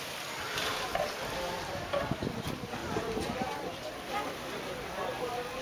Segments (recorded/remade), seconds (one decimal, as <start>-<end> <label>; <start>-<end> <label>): 0.0-2.8 recorded; 2.8-4.7 remade; 4.7-5.6 recorded